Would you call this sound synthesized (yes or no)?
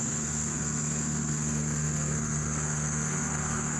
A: yes